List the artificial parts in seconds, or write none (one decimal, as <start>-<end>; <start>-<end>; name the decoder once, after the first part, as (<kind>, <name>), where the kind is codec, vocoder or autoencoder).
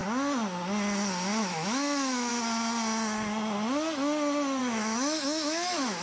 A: 1.4-2.3 (autoencoder, DAC-VAE); 4.6-6.0